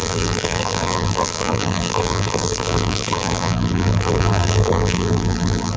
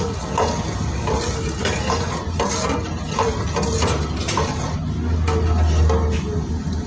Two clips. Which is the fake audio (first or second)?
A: first